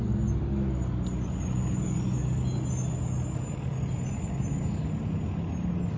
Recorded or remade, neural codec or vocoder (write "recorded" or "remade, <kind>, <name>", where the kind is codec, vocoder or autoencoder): recorded